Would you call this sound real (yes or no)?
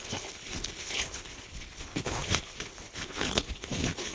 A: no